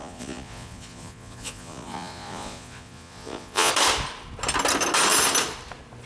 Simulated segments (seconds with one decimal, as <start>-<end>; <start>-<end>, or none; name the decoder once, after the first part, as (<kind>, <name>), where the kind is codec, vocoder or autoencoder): 0.0-3.7 (vocoder, Vocos)